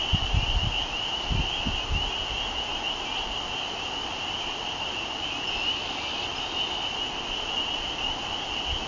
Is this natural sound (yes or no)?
yes